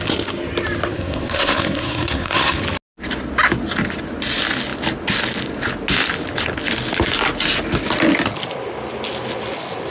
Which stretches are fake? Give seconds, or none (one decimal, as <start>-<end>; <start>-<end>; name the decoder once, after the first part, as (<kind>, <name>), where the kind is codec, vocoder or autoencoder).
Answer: 0.9-2.6 (codec, SNAC)